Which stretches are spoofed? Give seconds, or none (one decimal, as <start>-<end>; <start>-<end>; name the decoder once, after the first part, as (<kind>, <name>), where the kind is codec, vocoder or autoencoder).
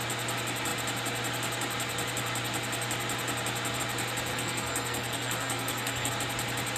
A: 4.3-6.1 (codec, SNAC)